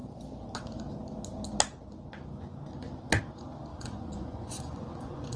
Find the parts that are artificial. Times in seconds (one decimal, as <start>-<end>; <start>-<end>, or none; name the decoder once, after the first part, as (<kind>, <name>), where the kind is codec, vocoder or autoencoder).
3.7-5.4 (vocoder, Vocos)